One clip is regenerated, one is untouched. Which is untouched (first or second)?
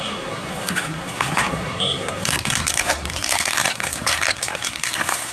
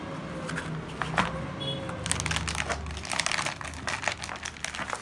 second